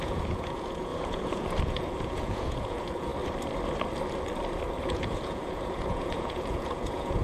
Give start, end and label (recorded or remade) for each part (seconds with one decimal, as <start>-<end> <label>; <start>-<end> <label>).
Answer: 0.0-3.1 remade; 3.1-4.8 recorded; 4.8-7.2 remade